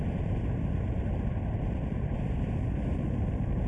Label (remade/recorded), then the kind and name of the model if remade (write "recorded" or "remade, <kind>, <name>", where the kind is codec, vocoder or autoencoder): remade, vocoder, BigVGAN v2